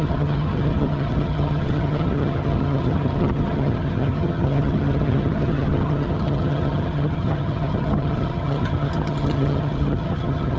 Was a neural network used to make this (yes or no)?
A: yes